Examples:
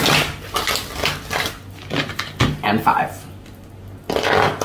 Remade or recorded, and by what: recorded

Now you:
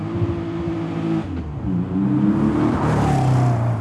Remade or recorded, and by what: recorded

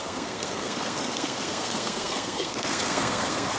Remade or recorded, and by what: remade, codec, SNAC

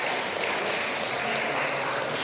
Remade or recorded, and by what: recorded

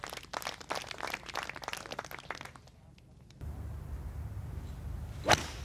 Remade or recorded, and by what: recorded